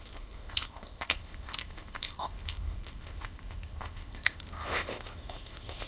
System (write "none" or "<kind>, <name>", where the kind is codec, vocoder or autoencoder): codec, ZipCodec